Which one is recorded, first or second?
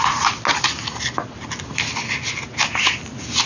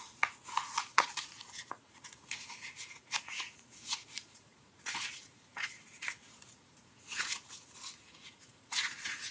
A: first